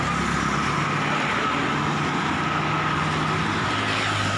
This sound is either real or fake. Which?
real